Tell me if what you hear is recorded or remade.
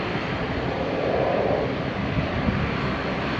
recorded